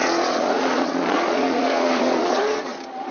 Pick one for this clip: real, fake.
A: fake